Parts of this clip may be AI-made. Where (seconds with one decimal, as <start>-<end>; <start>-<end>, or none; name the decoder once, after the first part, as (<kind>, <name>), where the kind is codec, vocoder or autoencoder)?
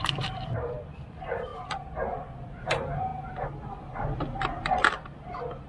0.0-1.5 (vocoder, BigVGAN v2); 2.6-5.7